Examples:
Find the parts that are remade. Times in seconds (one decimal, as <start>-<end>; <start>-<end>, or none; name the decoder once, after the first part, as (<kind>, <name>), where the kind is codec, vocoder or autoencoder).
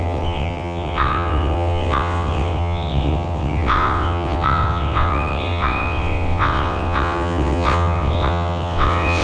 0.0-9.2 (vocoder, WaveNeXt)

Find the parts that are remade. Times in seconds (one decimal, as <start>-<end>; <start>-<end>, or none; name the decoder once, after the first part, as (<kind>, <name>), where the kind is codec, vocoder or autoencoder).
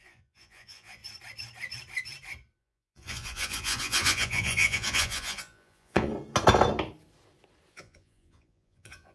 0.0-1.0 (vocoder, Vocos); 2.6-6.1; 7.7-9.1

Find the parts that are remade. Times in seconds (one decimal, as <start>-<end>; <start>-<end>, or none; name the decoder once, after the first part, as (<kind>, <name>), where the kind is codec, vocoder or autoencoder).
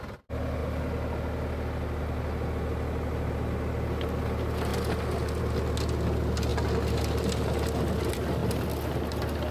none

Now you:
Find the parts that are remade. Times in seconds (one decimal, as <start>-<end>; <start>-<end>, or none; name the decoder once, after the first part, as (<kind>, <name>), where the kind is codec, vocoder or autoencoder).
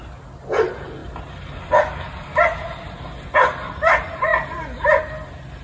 none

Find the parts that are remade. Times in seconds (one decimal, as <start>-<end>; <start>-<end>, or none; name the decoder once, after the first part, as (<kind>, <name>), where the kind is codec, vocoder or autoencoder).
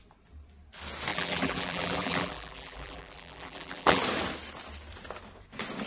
1.1-4.0 (vocoder, BigVGAN v2)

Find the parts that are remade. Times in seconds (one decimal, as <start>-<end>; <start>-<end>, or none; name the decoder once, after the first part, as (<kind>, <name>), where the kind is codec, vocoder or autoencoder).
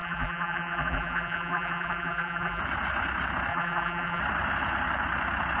0.0-2.6 (vocoder, BigVGAN v2); 3.5-4.2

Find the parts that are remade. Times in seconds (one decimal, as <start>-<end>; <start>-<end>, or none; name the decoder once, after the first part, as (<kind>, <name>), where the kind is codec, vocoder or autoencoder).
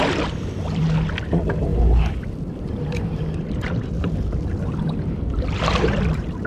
0.0-6.5 (vocoder, BigVGAN v2)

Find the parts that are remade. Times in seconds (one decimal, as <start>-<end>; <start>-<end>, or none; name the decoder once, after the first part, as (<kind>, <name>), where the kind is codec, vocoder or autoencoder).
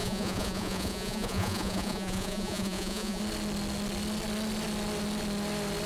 0.0-3.2 (vocoder, Vocos)